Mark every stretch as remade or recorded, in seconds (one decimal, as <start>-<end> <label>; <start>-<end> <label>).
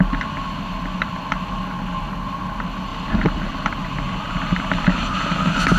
0.0-5.8 recorded